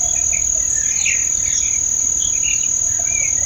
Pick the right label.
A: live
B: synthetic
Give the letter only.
A